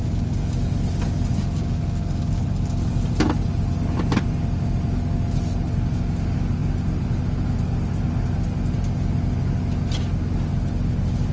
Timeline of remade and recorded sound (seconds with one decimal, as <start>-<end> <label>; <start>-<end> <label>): 0.0-11.3 recorded

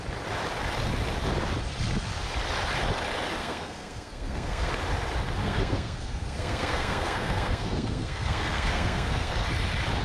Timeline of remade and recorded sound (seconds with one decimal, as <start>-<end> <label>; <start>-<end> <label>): 0.0-3.4 recorded; 3.4-4.7 remade; 4.7-5.4 recorded; 5.4-9.3 remade; 9.3-10.0 recorded

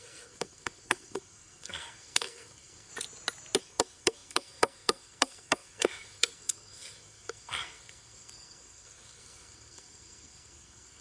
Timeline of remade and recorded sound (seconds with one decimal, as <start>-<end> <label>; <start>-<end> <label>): 0.0-2.9 remade; 2.9-3.6 recorded; 3.6-11.0 remade